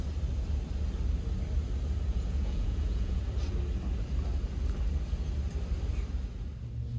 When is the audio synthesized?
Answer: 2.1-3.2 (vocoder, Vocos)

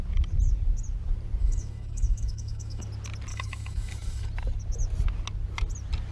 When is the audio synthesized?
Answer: 1.4-2.8 (autoencoder, DAC-VAE); 3.3-4.3

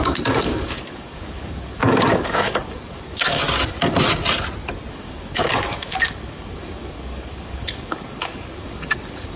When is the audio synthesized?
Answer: 0.0-3.4 (codec, DAC); 4.9-9.4

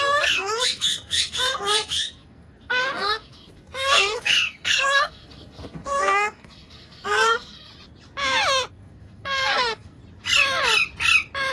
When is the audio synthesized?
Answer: 0.0-7.7 (codec, SNAC); 8.7-10.0

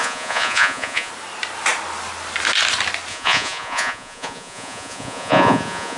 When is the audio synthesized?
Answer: 0.0-1.1 (vocoder, Vocos); 3.1-6.0

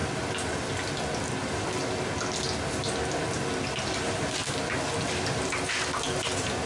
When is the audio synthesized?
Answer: none

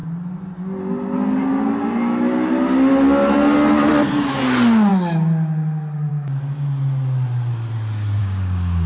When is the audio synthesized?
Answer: 8.2-8.9 (codec, DAC)

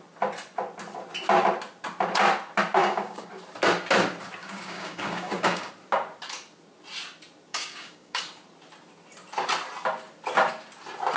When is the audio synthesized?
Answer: 2.8-3.3 (codec, DAC); 4.4-5.7; 7.5-8.2